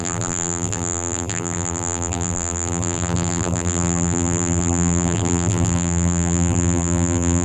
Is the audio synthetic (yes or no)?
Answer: yes